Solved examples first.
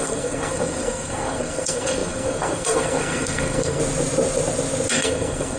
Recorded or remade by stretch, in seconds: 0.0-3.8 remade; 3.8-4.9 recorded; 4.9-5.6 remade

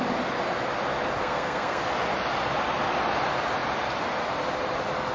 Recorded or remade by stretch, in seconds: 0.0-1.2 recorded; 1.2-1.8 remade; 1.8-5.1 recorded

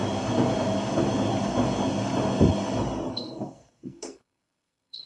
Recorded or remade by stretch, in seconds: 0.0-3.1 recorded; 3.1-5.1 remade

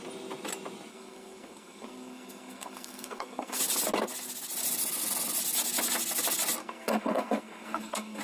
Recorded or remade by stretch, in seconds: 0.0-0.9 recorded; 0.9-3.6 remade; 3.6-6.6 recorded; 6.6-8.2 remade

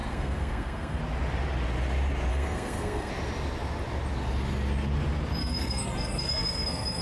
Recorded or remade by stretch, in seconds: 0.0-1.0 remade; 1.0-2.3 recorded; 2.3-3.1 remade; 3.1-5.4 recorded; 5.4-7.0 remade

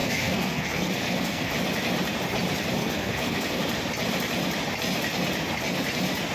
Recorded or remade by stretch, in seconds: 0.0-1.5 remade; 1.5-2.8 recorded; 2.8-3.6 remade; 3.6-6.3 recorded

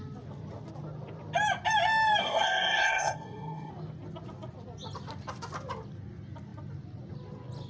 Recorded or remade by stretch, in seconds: 0.0-2.2 recorded; 2.2-3.7 remade; 3.7-7.7 recorded